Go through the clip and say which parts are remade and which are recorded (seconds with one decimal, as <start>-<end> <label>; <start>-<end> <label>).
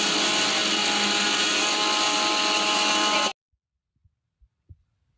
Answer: 0.0-5.2 recorded